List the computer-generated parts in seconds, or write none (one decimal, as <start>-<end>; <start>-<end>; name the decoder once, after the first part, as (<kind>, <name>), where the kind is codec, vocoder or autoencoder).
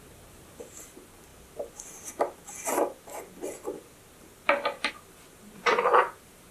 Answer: 0.0-1.3 (vocoder, BigVGAN v2); 4.9-6.5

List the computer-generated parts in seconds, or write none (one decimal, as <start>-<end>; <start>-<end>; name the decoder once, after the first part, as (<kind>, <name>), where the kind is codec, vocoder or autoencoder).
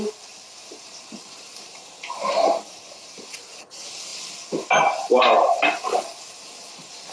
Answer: 0.6-3.2 (vocoder, BigVGAN v2)